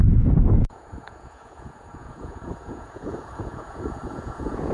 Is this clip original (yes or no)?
no